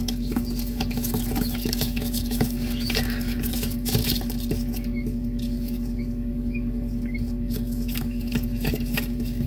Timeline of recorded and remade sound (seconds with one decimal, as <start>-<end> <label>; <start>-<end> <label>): 0.0-4.0 remade; 4.0-4.5 recorded; 4.5-9.5 remade